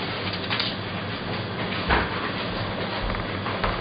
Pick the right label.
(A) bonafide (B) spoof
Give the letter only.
A